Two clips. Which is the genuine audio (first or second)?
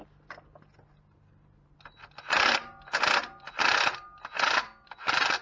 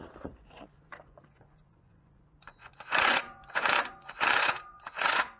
first